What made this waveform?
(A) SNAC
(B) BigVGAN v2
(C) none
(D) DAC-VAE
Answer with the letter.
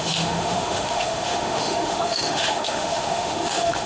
D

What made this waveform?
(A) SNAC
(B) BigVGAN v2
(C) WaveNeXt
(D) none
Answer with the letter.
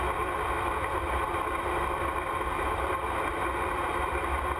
D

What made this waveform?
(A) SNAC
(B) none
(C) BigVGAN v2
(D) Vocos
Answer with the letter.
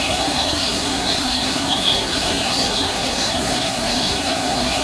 A